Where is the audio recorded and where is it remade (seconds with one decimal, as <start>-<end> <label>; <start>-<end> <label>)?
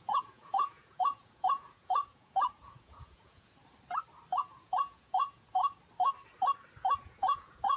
0.0-3.6 remade; 3.6-4.4 recorded; 4.4-5.6 remade; 5.6-7.0 recorded; 7.0-7.8 remade